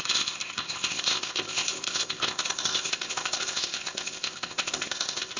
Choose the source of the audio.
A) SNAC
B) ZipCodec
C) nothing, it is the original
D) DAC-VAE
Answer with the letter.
B